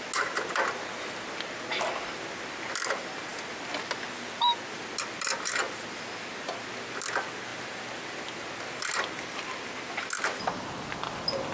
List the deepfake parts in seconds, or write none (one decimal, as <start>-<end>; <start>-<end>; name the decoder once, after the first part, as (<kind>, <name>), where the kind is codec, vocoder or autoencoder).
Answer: none